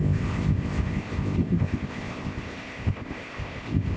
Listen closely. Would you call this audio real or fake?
fake